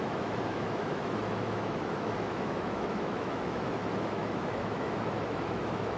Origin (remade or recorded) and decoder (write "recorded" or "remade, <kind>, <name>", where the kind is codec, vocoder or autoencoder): remade, autoencoder, DAC-VAE